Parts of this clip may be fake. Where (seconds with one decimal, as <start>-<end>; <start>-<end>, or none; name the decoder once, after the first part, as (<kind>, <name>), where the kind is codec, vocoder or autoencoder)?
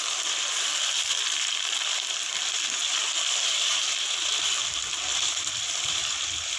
0.0-6.6 (vocoder, BigVGAN v2)